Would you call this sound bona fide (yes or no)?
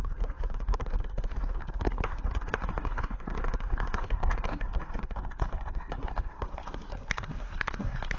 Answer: no